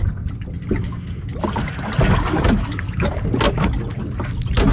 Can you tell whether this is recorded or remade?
recorded